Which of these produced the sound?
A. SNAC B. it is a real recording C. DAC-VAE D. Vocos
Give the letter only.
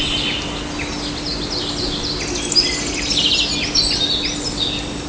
B